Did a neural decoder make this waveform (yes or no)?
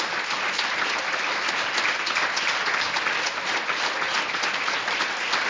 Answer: no